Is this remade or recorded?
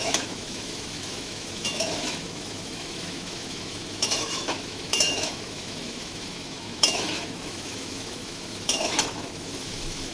remade